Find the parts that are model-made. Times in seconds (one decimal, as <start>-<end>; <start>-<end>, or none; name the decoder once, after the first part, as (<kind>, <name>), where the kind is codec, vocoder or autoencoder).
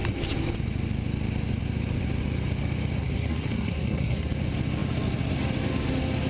3.0-4.3 (codec, SNAC)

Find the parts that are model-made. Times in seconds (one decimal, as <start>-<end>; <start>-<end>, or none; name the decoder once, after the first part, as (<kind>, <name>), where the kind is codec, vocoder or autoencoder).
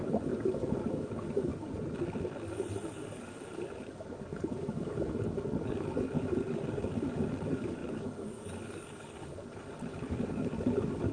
0.0-1.5 (codec, DAC); 2.9-11.1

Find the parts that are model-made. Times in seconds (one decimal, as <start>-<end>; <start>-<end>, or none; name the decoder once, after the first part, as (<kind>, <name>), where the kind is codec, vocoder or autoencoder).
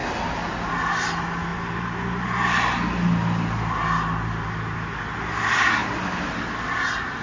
none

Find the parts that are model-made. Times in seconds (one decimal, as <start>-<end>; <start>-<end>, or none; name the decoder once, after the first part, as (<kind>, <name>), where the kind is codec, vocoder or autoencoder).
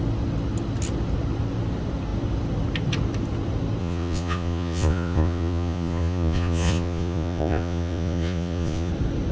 3.8-8.9 (vocoder, Vocos)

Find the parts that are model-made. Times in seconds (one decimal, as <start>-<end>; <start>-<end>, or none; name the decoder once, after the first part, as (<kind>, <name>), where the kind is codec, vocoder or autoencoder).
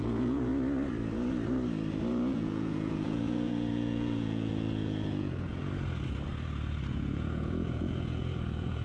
0.0-0.5 (vocoder, Vocos); 2.1-5.6; 6.9-8.8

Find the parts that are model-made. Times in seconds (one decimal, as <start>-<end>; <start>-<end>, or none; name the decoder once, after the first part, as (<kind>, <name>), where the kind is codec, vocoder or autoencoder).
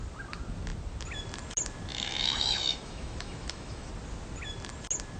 1.9-3.9 (autoencoder, DAC-VAE)